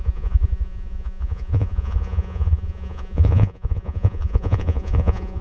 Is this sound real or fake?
fake